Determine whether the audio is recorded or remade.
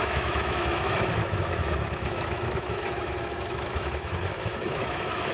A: remade